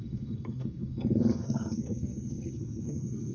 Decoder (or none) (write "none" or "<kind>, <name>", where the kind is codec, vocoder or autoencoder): codec, SNAC